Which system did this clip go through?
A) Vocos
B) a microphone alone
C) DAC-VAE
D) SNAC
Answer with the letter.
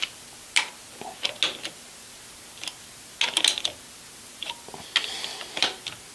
B